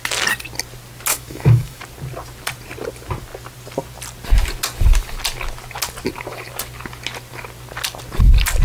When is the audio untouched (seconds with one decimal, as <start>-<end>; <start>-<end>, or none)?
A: 0.0-1.1; 1.8-8.6